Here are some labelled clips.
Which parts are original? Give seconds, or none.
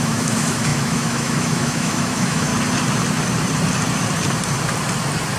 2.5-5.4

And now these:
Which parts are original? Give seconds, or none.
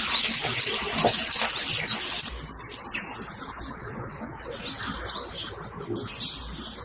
0.0-3.7; 4.6-6.8